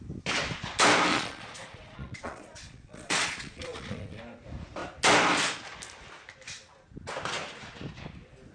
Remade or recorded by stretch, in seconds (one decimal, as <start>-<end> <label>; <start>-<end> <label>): 0.0-1.1 recorded; 1.1-4.2 remade; 4.2-8.5 recorded